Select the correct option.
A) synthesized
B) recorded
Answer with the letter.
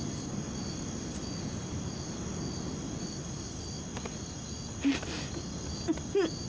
B